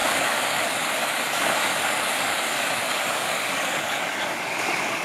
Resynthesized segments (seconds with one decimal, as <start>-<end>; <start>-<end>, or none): 0.0-5.0

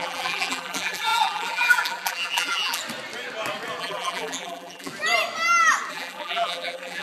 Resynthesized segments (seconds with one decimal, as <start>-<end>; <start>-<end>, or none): 0.0-2.8; 3.8-4.9; 5.9-7.0

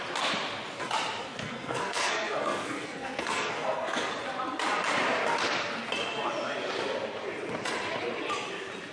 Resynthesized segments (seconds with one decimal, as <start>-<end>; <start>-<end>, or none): 1.2-4.1

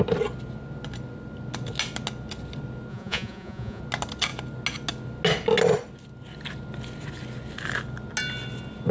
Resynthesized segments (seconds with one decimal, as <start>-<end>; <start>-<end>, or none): 2.9-3.8

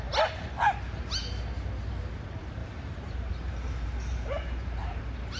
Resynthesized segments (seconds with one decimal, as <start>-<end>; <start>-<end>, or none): 2.6-5.0

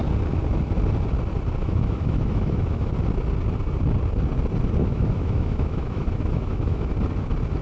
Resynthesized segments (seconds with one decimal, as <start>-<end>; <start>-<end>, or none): 1.6-2.9; 4.8-6.9